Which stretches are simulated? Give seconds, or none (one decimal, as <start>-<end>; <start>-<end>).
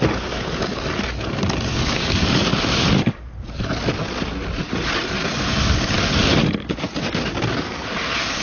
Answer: none